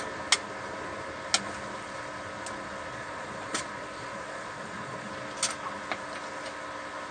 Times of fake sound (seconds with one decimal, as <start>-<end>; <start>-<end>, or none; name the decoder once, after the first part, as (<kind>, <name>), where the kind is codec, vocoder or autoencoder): 2.9-5.1 (vocoder, Vocos)